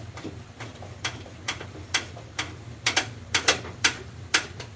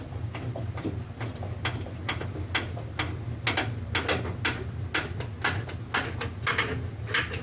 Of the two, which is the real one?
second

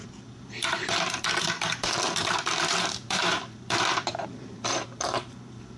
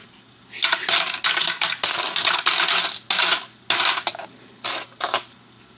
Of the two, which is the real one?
second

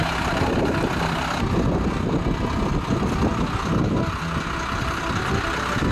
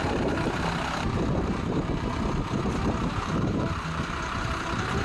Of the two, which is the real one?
first